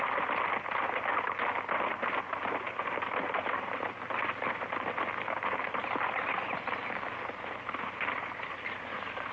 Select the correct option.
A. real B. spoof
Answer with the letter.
A